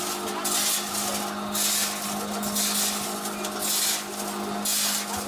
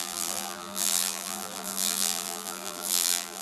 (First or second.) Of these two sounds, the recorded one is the first